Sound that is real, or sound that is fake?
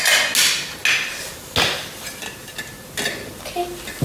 real